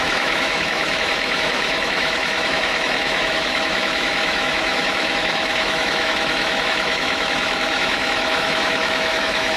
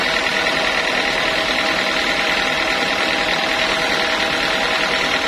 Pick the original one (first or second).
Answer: second